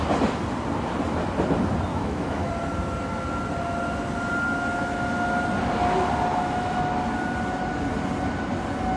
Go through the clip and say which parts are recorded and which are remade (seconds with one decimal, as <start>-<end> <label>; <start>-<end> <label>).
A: 0.0-1.9 recorded; 1.9-2.5 remade; 2.5-6.3 recorded; 6.3-6.8 remade; 6.8-9.0 recorded